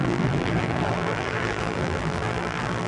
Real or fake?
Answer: fake